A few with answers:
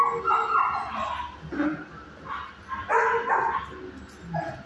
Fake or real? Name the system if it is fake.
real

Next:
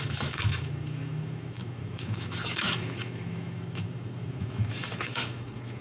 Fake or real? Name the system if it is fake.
fake, autoencoder, DAC-VAE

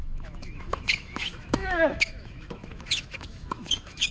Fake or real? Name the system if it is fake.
fake, autoencoder, DAC-VAE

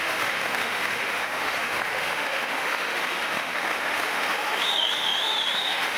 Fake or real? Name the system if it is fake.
fake, autoencoder, DAC-VAE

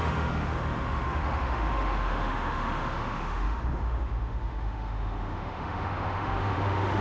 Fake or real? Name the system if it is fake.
fake, autoencoder, DAC-VAE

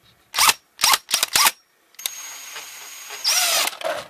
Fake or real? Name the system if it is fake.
real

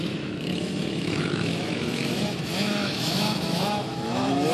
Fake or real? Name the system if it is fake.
fake, autoencoder, DAC-VAE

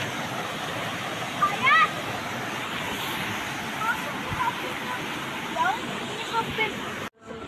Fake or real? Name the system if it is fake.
real